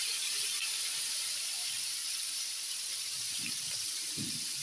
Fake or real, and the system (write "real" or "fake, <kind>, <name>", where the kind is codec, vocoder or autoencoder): fake, vocoder, BigVGAN v2